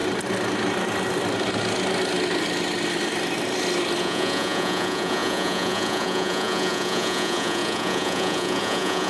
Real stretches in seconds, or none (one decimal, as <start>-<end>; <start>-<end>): 0.0-4.0